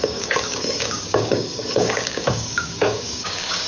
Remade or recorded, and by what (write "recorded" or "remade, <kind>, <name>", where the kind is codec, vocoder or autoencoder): remade, codec, DAC